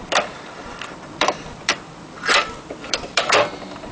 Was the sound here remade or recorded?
remade